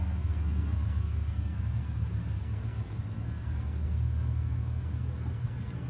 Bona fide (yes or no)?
no